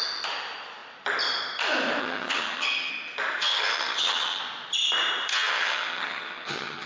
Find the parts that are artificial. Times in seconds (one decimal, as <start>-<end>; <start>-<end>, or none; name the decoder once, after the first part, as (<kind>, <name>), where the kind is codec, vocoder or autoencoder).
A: 2.0-2.9 (vocoder, HiFi-GAN); 3.4-4.4; 5.3-6.9

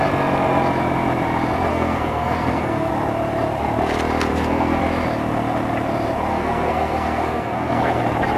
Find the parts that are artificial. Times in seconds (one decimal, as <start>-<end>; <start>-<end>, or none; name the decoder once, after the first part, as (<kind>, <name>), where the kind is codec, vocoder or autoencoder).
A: 1.7-2.9 (codec, SNAC); 4.3-4.8; 6.3-8.0

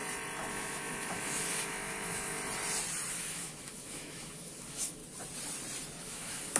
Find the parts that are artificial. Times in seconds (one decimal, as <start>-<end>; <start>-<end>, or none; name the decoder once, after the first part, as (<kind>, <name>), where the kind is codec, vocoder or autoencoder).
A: 0.5-2.4 (autoencoder, DAC-VAE); 3.1-5.0; 6.0-6.6

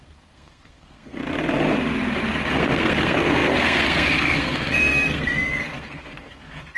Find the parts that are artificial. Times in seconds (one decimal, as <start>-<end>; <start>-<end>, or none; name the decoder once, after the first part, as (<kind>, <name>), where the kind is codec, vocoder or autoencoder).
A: 0.0-1.2 (codec, SNAC); 2.5-6.8